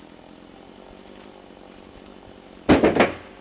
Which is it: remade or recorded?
recorded